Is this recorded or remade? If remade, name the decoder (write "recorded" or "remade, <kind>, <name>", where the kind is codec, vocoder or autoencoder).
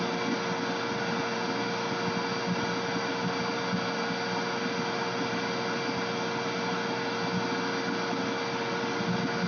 recorded